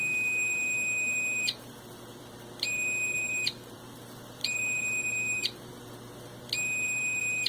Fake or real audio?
fake